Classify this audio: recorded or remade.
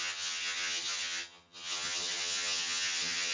remade